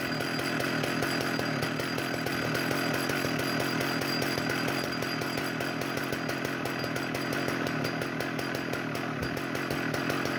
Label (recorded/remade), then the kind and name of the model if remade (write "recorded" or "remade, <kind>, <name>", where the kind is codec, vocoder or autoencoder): recorded